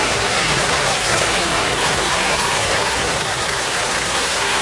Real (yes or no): no